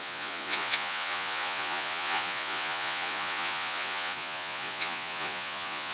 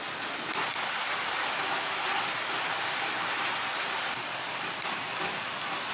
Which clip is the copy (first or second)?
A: first